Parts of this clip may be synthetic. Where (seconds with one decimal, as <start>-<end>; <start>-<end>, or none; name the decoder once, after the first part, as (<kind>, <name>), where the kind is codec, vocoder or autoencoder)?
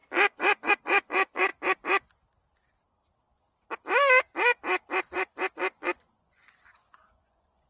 0.0-1.5 (vocoder, Vocos); 5.5-7.7